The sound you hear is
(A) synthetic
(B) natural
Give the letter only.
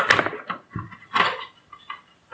B